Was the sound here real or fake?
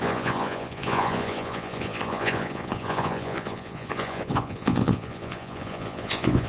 fake